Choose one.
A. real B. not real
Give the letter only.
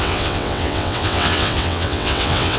B